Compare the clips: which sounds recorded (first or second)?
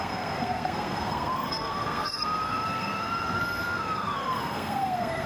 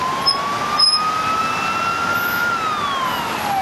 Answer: second